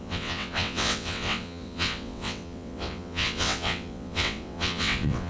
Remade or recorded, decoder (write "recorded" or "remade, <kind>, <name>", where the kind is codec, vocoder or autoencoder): remade, vocoder, WaveNeXt